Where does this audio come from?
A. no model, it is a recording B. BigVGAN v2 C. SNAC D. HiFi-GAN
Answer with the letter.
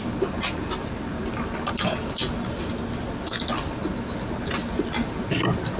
A